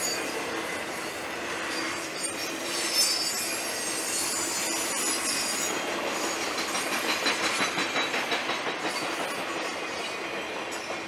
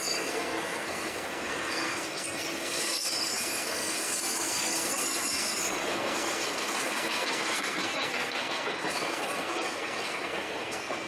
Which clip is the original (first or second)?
first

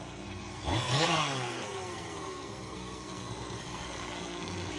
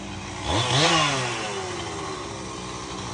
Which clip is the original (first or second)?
second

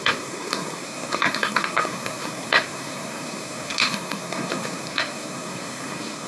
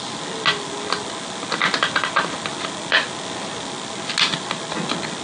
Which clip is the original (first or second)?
second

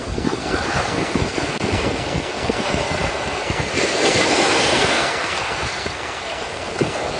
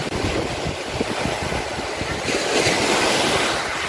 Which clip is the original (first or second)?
second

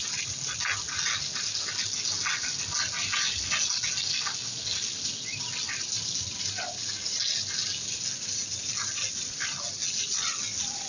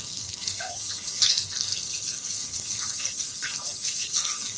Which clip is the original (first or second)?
first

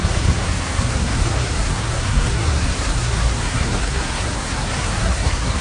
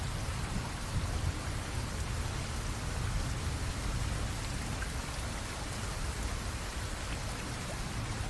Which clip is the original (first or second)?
second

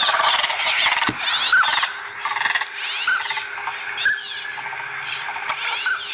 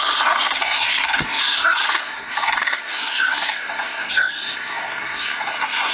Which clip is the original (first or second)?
first